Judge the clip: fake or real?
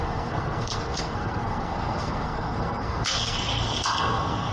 fake